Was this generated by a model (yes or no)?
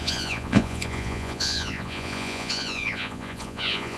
yes